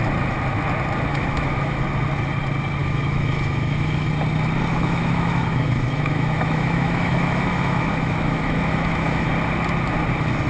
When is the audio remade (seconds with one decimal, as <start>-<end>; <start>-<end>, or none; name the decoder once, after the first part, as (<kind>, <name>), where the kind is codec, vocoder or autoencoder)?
1.1-1.8 (autoencoder, DAC-VAE); 2.8-4.1; 4.7-9.3